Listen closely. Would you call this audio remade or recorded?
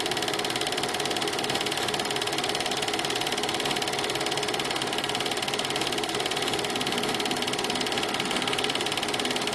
recorded